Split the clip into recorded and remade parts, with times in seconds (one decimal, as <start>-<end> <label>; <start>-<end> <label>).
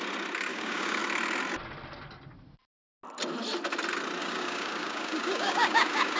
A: 0.0-0.5 recorded; 0.5-1.0 remade; 1.0-4.2 recorded; 4.2-6.2 remade